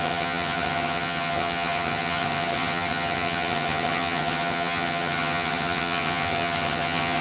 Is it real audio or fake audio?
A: fake